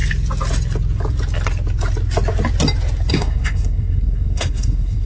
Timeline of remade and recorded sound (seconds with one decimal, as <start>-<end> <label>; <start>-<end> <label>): 0.0-3.1 recorded; 3.1-5.1 remade